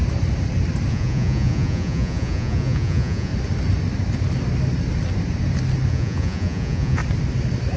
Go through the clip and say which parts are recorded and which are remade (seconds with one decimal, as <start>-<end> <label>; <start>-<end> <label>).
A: 0.0-0.9 recorded; 0.9-3.3 remade; 3.3-5.9 recorded; 5.9-7.0 remade; 7.0-7.8 recorded

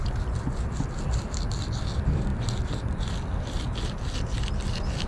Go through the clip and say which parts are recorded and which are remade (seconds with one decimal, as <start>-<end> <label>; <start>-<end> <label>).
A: 0.0-5.1 recorded

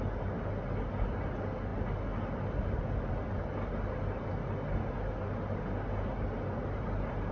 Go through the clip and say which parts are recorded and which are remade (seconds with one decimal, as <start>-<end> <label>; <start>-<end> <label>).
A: 0.0-7.3 recorded

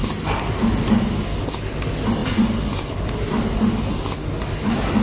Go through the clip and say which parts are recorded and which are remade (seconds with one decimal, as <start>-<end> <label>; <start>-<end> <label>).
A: 0.0-5.0 recorded

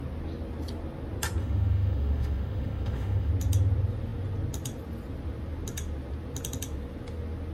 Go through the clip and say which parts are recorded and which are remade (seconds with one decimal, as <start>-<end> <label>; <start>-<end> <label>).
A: 0.0-1.4 recorded; 1.4-3.3 remade; 3.3-7.5 recorded

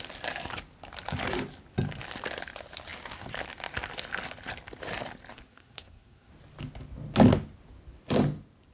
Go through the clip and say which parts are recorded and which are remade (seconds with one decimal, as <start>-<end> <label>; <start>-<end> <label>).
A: 0.0-5.3 recorded; 5.3-6.3 remade; 6.3-8.7 recorded

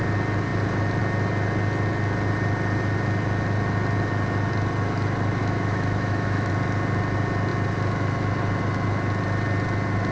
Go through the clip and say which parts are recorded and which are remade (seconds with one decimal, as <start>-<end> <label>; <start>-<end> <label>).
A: 0.0-5.4 recorded; 5.4-6.5 remade; 6.5-10.1 recorded

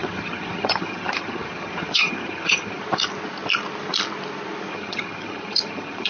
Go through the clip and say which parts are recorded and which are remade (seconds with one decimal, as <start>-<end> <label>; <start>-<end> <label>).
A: 0.0-2.8 remade; 2.8-4.7 recorded; 4.7-6.1 remade